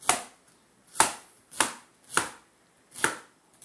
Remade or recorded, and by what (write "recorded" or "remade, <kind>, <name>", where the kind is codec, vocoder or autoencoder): recorded